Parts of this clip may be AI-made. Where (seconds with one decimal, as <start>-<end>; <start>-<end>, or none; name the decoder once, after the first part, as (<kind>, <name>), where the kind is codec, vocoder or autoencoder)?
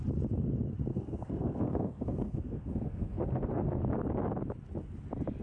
0.9-3.8 (codec, SNAC)